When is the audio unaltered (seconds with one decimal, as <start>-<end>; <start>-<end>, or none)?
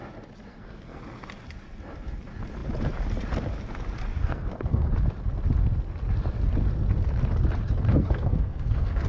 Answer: 0.0-0.5; 1.0-4.2; 4.9-7.9